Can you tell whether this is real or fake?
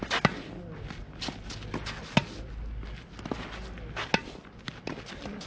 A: real